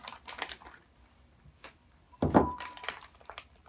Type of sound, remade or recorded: remade